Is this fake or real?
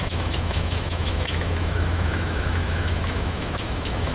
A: fake